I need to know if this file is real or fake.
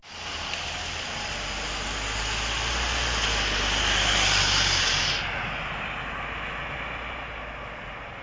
real